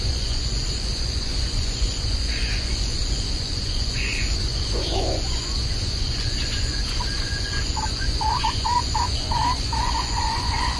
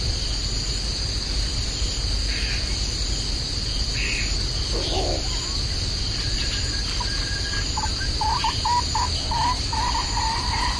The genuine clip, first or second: second